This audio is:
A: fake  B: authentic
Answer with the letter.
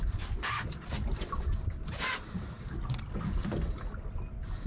B